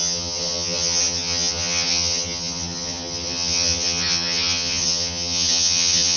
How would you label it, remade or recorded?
remade